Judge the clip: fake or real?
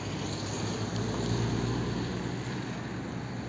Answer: real